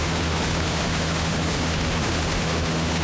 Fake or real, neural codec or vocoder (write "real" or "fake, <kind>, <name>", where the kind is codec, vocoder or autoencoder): fake, autoencoder, DAC-VAE